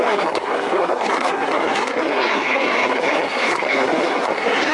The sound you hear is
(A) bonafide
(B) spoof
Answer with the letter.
B